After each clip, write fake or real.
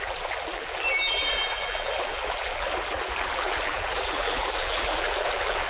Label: fake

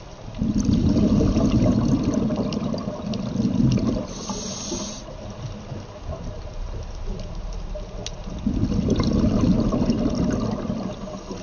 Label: real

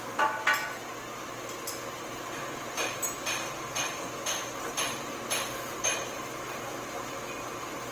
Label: real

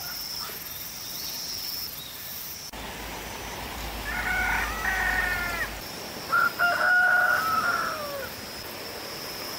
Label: fake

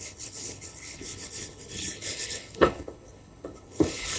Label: fake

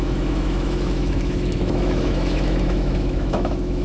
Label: fake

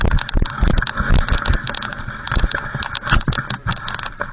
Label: real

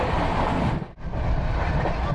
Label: real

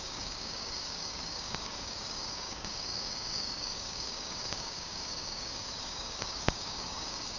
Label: fake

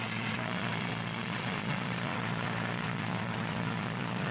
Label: fake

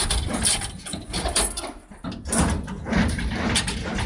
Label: real